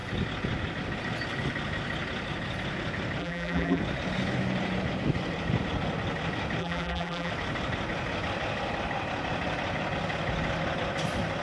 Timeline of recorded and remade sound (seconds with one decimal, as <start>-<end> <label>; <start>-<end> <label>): 0.0-3.2 recorded; 3.2-3.8 remade; 3.8-6.6 recorded; 6.6-7.3 remade; 7.3-11.4 recorded